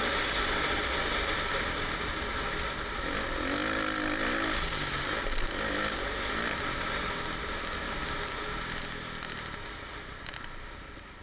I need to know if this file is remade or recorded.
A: recorded